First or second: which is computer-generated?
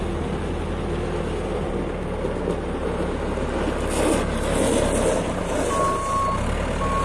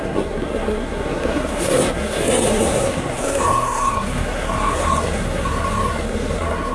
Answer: second